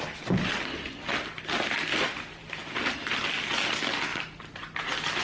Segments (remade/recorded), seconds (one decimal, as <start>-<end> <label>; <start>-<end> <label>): 0.0-2.6 recorded; 2.6-3.2 remade; 3.2-4.1 recorded; 4.1-5.2 remade